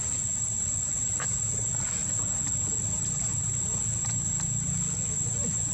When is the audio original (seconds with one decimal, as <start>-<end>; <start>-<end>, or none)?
0.0-5.7

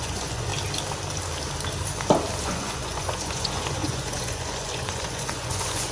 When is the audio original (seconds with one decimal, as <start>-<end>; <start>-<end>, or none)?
0.5-2.4

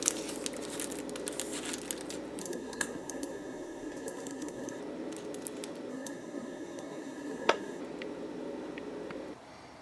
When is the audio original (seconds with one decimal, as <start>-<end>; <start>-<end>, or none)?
0.0-2.4; 4.8-5.9; 7.8-9.8

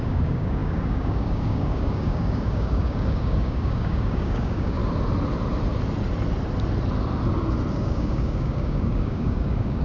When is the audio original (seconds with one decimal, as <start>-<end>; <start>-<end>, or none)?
4.8-7.7

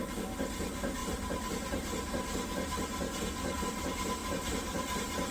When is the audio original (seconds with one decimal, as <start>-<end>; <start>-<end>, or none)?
0.0-4.2

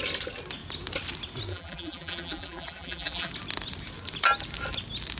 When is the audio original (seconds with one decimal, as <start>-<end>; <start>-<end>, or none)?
0.0-1.5; 3.3-5.2